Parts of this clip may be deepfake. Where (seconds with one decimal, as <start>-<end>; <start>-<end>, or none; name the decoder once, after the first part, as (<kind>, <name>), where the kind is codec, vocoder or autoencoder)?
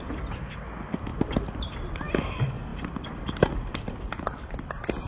0.0-1.1 (vocoder, BigVGAN v2); 1.9-2.7; 4.5-5.1